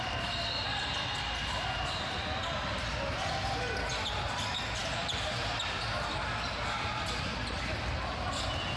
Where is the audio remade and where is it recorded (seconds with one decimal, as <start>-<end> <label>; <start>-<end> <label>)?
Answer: 0.0-8.8 recorded